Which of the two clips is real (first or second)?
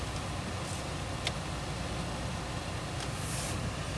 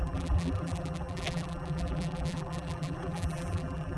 first